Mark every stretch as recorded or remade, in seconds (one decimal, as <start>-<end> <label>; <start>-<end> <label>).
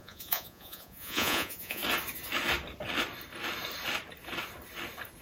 0.0-1.8 remade; 1.8-5.2 recorded